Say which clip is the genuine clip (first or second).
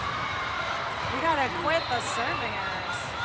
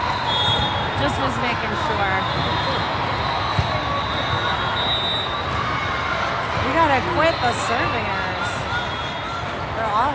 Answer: second